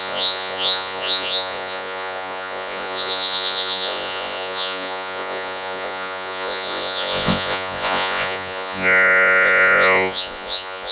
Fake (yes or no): yes